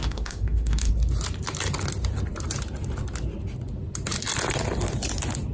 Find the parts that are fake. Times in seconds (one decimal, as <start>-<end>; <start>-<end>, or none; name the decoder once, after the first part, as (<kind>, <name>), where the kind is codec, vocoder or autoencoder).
0.0-0.9 (autoencoder, DAC-VAE)